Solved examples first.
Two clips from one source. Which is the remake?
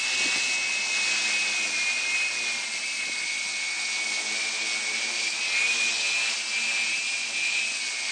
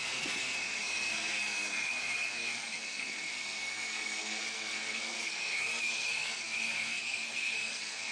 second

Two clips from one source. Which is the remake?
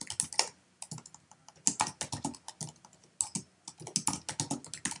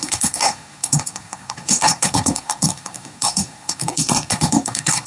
second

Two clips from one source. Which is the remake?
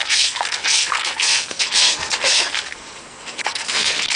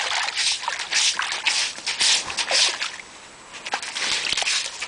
first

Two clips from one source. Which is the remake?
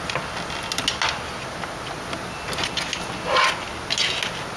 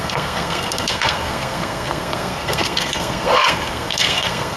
second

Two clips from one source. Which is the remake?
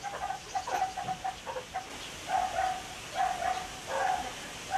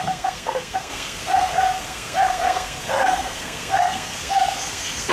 second